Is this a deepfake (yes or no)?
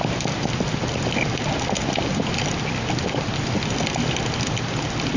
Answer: no